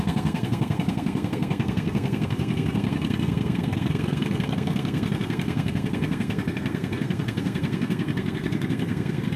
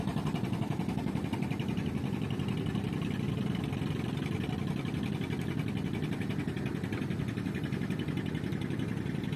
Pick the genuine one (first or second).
second